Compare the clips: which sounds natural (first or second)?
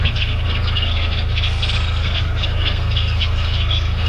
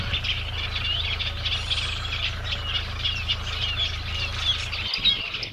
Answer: second